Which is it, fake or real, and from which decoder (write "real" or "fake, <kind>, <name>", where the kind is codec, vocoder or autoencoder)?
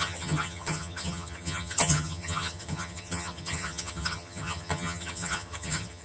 fake, vocoder, HiFi-GAN